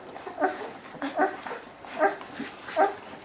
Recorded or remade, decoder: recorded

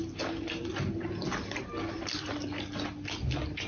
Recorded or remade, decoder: recorded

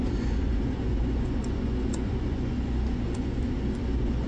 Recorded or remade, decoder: remade, vocoder, Vocos